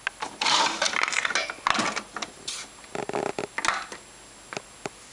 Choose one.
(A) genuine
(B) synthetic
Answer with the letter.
A